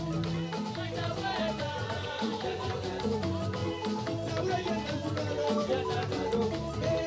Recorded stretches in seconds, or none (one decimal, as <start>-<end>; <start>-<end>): 0.0-1.8; 2.9-7.1